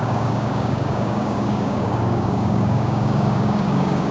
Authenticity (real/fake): fake